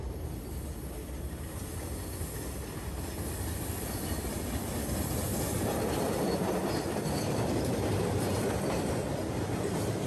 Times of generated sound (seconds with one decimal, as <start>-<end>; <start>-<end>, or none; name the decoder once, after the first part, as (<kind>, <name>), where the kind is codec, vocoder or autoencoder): none